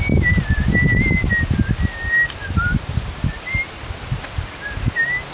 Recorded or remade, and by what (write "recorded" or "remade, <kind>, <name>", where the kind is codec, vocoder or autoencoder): recorded